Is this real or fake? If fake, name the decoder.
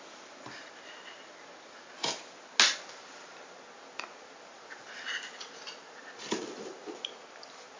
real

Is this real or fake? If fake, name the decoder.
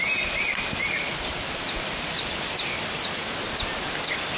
real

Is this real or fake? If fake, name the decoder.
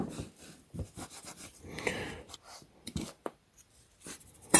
fake, vocoder, BigVGAN v2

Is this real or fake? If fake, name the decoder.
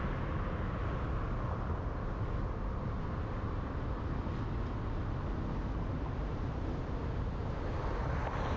real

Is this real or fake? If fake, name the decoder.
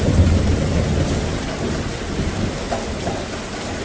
real